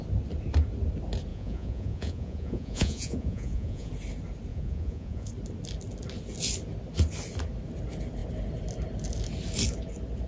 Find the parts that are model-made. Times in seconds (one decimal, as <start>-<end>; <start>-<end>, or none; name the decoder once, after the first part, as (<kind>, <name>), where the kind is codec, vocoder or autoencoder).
1.3-3.9 (vocoder, Vocos); 4.5-5.3